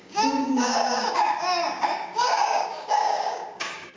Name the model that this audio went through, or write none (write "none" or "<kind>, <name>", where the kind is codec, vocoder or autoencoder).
codec, DAC